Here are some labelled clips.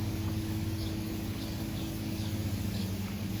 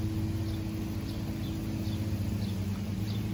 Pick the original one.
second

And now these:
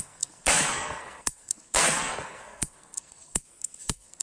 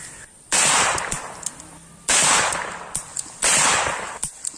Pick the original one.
second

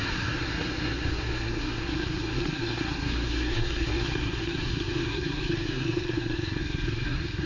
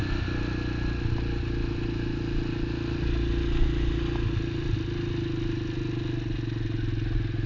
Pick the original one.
second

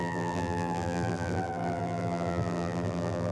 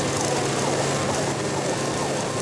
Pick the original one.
second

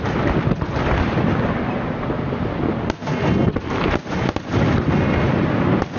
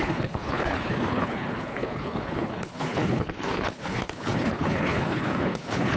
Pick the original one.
first